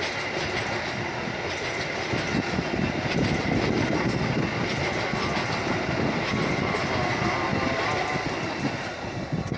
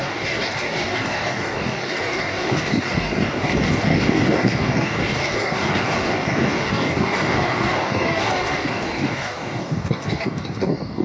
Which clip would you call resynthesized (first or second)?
second